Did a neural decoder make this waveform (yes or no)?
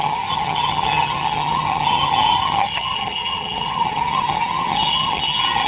yes